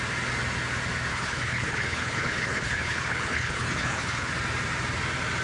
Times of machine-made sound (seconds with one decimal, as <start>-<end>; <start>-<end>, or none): 1.1-4.3